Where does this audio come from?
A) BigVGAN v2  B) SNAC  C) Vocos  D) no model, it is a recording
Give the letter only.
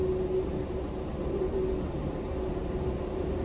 D